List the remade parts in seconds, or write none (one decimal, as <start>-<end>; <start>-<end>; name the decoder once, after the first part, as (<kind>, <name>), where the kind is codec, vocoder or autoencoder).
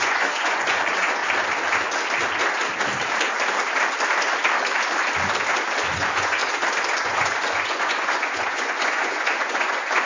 0.0-1.2 (vocoder, Vocos); 5.9-6.4; 7.0-10.1